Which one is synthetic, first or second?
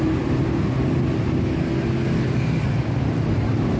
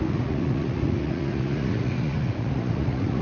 second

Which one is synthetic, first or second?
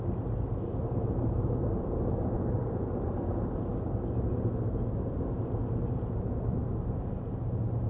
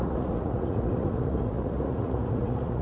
second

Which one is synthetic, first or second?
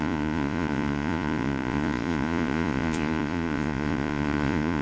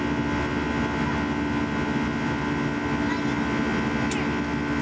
first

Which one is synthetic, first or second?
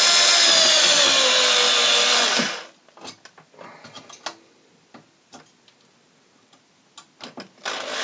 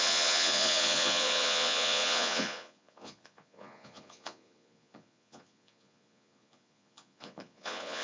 second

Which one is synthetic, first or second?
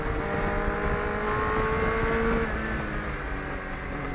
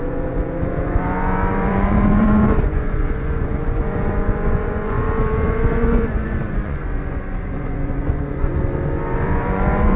second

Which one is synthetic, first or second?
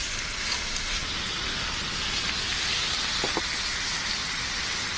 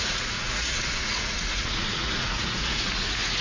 second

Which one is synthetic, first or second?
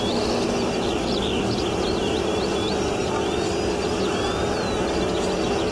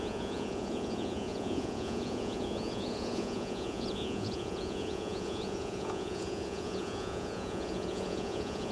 second